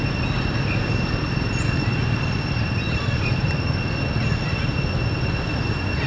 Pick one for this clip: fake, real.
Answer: real